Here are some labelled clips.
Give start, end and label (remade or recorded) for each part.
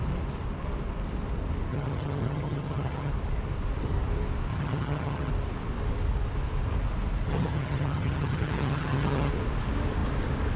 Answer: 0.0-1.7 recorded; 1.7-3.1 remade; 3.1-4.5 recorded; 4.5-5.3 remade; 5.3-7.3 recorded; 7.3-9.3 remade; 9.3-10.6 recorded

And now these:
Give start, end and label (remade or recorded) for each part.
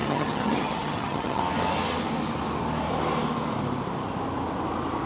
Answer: 0.0-1.4 remade; 1.4-5.1 recorded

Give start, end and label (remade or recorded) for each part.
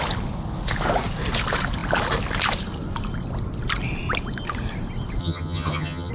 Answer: 0.0-5.2 recorded; 5.2-6.1 remade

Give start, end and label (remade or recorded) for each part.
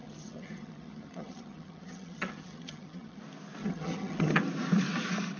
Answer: 0.0-3.2 remade; 3.2-3.6 recorded; 3.6-4.4 remade; 4.4-5.4 recorded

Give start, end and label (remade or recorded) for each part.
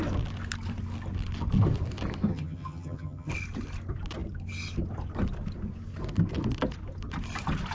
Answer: 0.0-2.3 recorded; 2.3-3.3 remade; 3.3-7.7 recorded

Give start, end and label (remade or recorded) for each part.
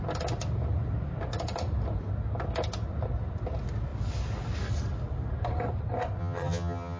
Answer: 0.0-6.2 recorded; 6.2-7.0 remade